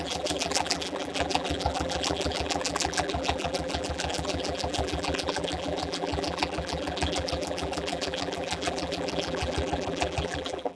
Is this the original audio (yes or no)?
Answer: no